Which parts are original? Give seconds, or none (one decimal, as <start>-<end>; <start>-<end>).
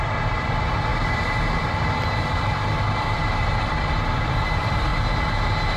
4.9-5.8